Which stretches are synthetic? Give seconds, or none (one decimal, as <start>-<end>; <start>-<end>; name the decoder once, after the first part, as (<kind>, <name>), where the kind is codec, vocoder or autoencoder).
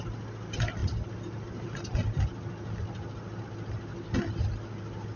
none